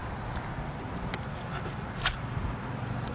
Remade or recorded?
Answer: recorded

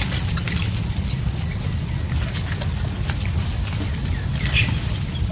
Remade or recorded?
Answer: recorded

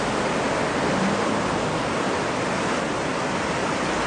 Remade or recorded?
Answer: recorded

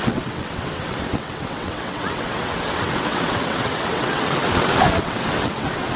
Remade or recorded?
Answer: remade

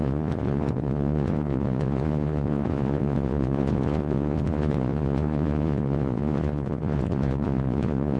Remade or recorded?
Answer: remade